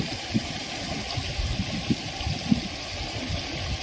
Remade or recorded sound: recorded